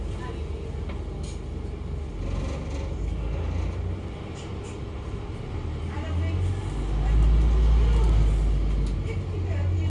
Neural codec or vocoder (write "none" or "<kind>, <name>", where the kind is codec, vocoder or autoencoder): none